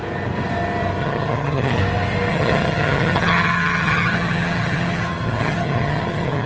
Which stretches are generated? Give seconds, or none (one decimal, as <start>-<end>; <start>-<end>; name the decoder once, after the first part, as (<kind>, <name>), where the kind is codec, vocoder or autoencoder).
1.0-1.8 (vocoder, HiFi-GAN); 2.3-6.5